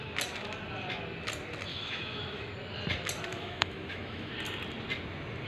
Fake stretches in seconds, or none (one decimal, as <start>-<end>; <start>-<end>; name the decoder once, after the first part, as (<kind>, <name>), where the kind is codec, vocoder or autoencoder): 1.7-2.5 (autoencoder, DAC-VAE); 3.3-4.3